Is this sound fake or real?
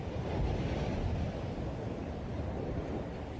real